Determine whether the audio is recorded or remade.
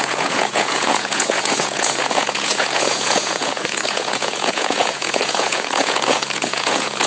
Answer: remade